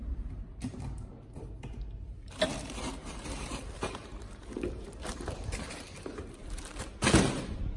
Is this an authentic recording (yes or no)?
no